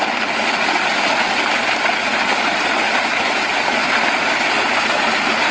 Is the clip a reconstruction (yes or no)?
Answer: no